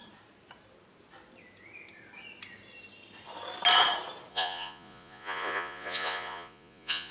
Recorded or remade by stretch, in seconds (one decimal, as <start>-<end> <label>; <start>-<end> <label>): 0.0-4.3 recorded; 4.3-7.1 remade